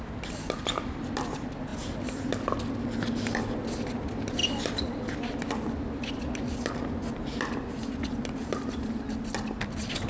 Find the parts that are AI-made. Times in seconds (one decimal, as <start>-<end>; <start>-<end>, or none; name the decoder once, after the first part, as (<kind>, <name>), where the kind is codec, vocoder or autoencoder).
none